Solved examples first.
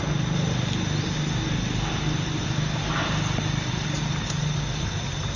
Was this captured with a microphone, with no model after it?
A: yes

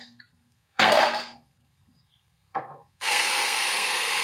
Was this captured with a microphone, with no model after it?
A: no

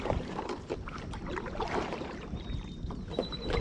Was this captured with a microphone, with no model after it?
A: no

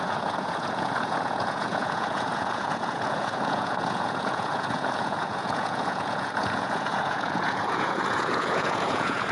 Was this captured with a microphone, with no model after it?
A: no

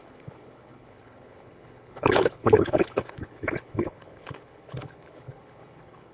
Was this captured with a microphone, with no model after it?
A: no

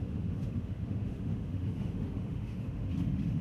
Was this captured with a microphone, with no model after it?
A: no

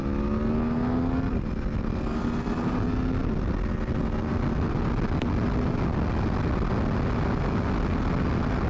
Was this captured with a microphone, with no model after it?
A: yes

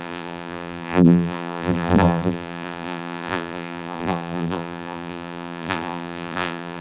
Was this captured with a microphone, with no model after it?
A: no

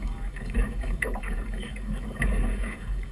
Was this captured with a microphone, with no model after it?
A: no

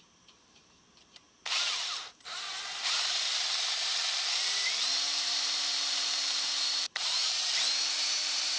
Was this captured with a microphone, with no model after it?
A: no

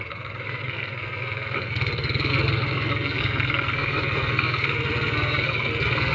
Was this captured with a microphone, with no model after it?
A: no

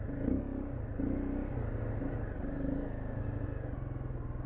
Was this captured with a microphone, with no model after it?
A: yes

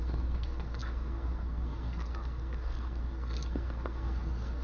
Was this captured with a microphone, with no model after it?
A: no